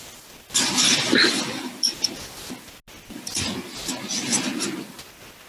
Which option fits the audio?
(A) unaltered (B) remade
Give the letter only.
A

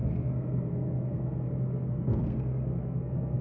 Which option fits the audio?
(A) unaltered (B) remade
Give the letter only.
B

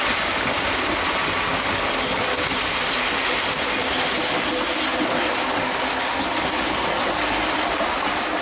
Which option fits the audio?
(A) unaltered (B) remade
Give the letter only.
A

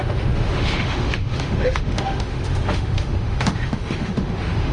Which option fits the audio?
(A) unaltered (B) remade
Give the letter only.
B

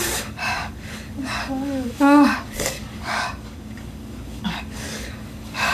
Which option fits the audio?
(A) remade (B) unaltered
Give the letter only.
A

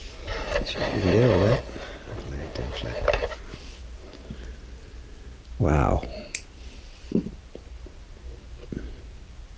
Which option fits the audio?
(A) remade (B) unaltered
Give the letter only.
B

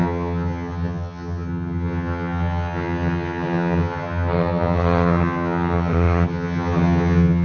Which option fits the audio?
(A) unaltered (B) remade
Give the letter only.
B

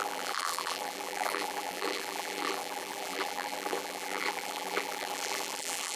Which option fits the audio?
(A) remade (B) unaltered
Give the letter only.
A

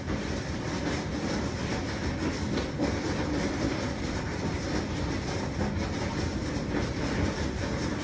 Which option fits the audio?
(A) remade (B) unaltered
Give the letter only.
B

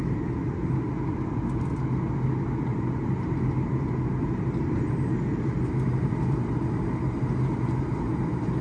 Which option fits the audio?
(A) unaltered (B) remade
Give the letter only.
A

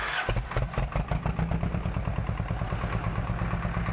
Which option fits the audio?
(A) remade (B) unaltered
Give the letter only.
B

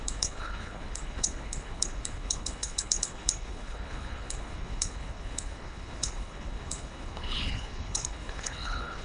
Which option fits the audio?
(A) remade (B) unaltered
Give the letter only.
A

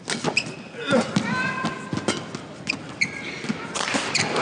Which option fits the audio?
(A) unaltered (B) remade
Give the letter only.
A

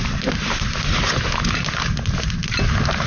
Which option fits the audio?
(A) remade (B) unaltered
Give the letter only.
B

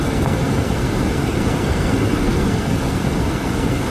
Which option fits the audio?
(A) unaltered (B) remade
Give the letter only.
B